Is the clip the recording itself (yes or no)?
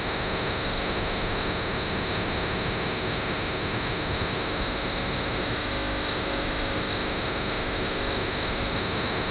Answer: no